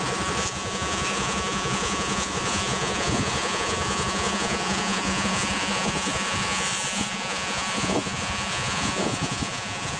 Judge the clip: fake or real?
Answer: fake